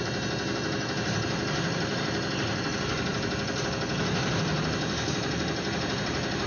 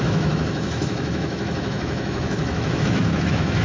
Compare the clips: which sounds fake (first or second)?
second